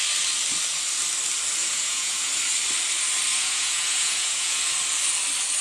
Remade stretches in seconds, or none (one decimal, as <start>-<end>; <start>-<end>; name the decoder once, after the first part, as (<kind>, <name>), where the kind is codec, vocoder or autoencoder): 1.6-2.3 (vocoder, Vocos); 3.3-4.6

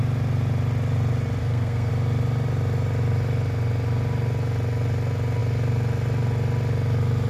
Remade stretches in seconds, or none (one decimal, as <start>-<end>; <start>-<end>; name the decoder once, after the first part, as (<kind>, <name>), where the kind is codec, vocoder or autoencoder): 1.4-1.9 (codec, SNAC)